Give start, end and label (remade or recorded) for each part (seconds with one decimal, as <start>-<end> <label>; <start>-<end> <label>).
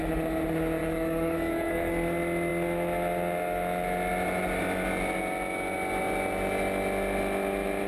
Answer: 0.0-0.8 recorded; 0.8-1.9 remade; 1.9-7.9 recorded